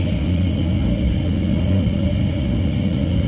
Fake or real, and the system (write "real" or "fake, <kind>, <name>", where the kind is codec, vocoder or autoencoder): fake, vocoder, Vocos